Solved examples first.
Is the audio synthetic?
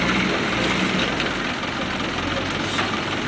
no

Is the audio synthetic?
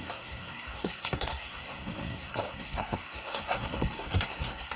yes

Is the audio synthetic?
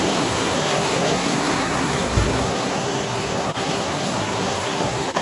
yes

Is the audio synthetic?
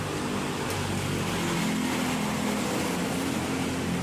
no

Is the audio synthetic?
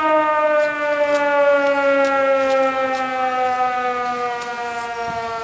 no